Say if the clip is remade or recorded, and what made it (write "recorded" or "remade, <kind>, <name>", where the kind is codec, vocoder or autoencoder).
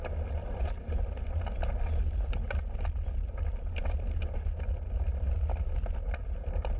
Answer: recorded